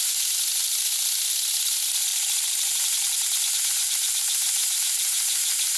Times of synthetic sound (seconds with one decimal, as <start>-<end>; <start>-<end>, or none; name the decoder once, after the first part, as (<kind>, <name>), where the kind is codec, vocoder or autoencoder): 0.6-1.3 (vocoder, BigVGAN v2); 2.1-4.8